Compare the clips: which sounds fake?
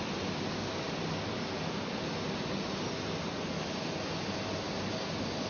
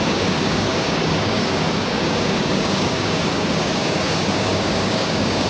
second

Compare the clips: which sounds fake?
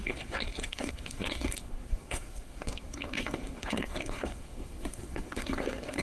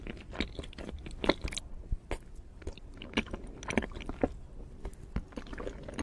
first